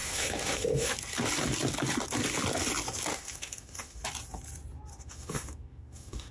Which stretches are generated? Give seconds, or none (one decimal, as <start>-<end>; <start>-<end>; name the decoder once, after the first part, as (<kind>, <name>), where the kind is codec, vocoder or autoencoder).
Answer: 0.0-0.9 (autoencoder, DAC-VAE); 3.1-4.0; 4.9-6.3